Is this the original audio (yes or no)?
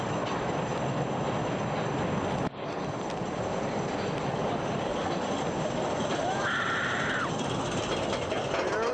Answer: yes